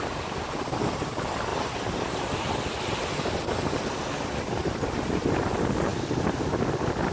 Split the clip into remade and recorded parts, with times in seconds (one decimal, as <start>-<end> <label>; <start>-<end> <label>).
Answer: 0.0-7.1 recorded